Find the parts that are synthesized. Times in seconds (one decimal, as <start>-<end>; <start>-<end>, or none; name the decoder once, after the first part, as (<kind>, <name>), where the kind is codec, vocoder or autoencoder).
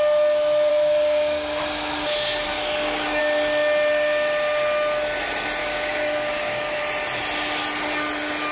0.7-1.6 (codec, DAC); 2.5-3.2; 5.6-6.8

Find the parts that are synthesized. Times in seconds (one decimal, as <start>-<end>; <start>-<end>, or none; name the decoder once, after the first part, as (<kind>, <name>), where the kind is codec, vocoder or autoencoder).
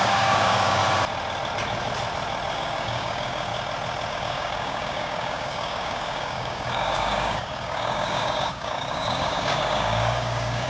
0.0-0.8 (codec, DAC); 2.5-3.5; 4.1-10.7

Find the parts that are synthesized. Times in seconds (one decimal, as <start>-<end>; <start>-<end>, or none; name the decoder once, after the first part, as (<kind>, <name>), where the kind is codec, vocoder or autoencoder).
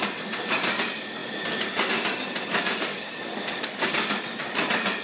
2.9-4.2 (codec, DAC)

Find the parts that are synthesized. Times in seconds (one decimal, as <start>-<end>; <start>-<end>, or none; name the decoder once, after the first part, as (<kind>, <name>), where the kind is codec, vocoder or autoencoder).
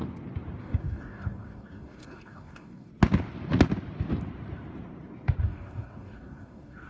0.6-2.9 (codec, DAC); 5.4-6.9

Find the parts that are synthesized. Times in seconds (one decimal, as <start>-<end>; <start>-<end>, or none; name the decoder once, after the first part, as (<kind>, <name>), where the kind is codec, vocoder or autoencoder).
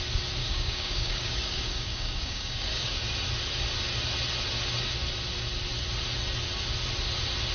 0.4-3.0 (codec, DAC)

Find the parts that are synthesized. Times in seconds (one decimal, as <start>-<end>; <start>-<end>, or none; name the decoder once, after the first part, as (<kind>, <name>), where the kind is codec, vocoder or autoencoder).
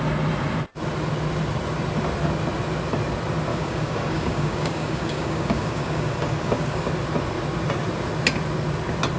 3.5-6.9 (codec, DAC)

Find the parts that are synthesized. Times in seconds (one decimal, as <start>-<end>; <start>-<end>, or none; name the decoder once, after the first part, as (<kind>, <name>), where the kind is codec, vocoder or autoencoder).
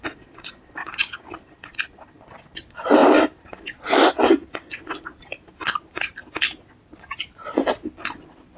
0.8-1.3 (codec, DAC)